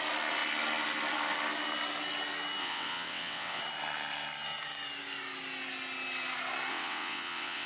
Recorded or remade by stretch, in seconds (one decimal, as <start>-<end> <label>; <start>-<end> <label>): 0.0-2.6 recorded; 2.6-3.6 remade; 3.6-6.7 recorded; 6.7-7.7 remade